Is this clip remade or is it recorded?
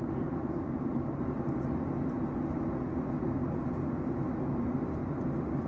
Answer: recorded